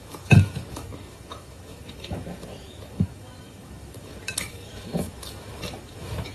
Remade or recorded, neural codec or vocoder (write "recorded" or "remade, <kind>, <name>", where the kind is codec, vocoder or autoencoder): remade, autoencoder, DAC-VAE